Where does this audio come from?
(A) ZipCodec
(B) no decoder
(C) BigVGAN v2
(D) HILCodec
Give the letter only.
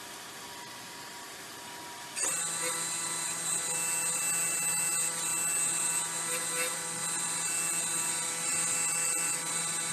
B